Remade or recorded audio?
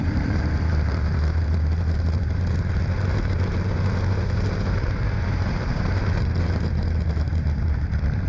remade